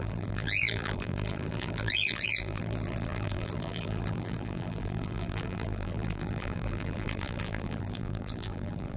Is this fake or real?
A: fake